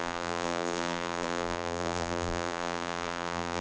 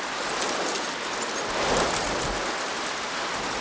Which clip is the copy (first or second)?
first